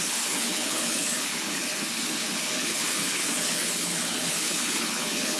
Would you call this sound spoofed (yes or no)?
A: yes